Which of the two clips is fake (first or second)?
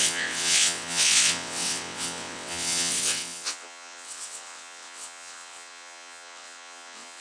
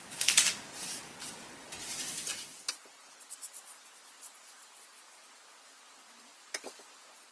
first